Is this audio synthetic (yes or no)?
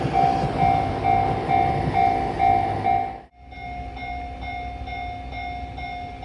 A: no